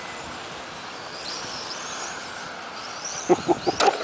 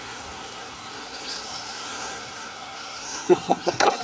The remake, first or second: second